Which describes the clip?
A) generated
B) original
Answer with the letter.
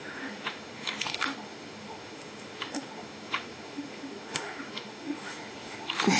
A